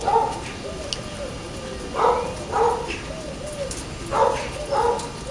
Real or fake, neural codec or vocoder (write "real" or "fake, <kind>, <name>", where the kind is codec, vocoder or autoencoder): real